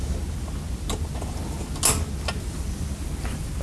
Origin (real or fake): real